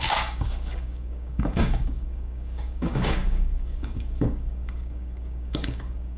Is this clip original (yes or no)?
no